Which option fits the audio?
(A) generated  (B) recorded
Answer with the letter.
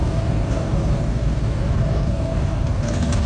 A